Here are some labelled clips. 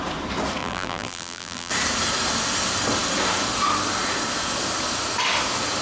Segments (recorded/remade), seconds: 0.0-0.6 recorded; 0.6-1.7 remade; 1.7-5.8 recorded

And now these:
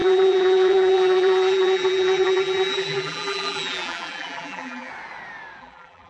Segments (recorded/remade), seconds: 0.0-4.9 remade; 4.9-5.6 recorded; 5.6-6.1 remade

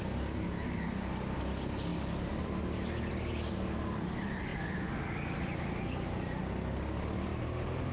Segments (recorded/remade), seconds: 0.0-7.3 recorded; 7.3-7.9 remade

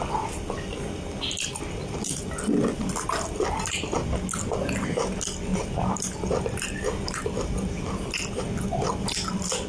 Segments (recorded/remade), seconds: 0.0-5.5 recorded; 5.5-7.8 remade; 7.8-9.7 recorded